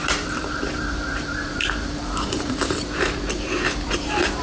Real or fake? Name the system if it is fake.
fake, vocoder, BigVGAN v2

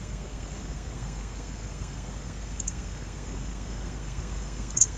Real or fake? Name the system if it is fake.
fake, codec, SNAC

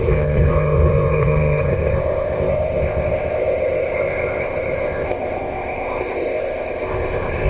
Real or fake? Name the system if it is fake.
fake, codec, ZipCodec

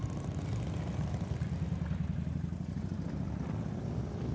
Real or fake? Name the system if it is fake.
real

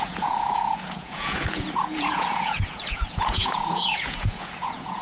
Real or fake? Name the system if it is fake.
fake, vocoder, Vocos